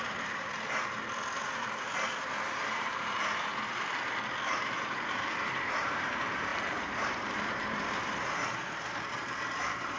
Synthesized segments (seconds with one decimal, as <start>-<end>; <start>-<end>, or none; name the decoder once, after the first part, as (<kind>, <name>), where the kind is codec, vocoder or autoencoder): 0.0-3.5 (vocoder, BigVGAN v2); 4.7-10.0